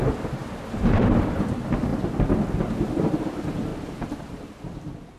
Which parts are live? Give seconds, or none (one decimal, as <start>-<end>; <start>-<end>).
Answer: none